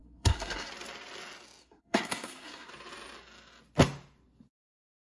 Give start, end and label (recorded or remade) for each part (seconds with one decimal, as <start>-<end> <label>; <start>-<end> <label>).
0.0-0.7 remade; 0.7-1.6 recorded; 1.6-2.7 remade; 2.7-5.1 recorded